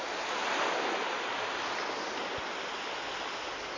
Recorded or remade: recorded